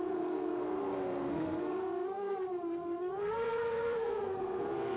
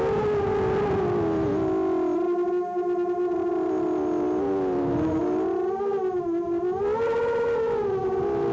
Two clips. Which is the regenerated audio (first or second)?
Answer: first